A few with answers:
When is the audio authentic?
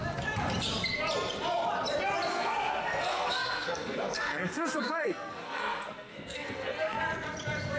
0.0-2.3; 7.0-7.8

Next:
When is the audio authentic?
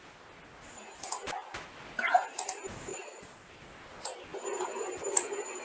0.0-2.9; 3.5-5.6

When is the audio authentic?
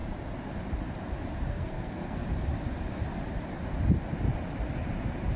0.0-1.5; 2.2-5.4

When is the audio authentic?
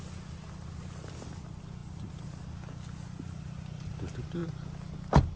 0.0-5.4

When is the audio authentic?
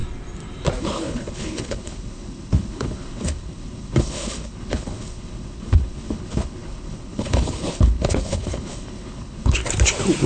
0.0-0.8; 9.6-10.3